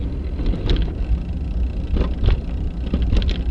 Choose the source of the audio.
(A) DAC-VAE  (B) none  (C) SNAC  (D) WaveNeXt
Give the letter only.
B